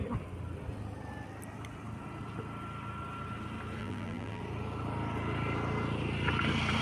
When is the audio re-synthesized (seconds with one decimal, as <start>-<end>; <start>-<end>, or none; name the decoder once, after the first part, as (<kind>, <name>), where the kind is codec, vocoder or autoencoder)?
3.8-4.4 (vocoder, BigVGAN v2)